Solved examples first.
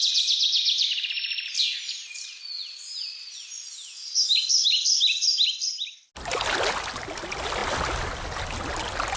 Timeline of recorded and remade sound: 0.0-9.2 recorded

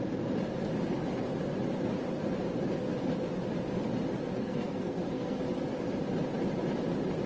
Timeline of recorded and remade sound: 0.0-4.4 recorded; 4.4-5.4 remade; 5.4-7.3 recorded

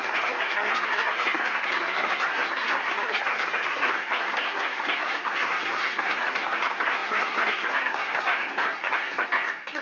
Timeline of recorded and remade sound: 0.0-9.8 remade

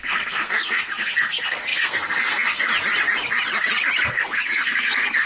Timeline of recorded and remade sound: 0.0-2.7 remade; 2.7-4.1 recorded; 4.1-5.3 remade

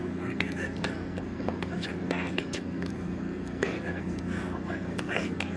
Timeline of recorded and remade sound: 0.0-5.6 remade

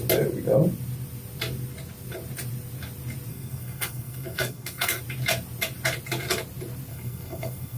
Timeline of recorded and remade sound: 0.0-3.3 recorded; 3.3-5.0 remade; 5.0-6.9 recorded; 6.9-7.8 remade

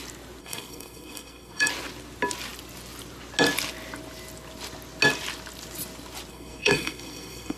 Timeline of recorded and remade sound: 0.0-0.4 recorded; 0.4-1.7 remade; 1.7-6.3 recorded; 6.3-7.6 remade